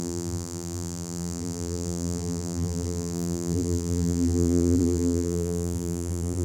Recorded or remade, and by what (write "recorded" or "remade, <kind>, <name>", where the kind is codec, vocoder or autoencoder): remade, vocoder, BigVGAN v2